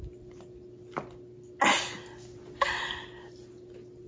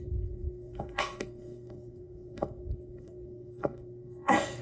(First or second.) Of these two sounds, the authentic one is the first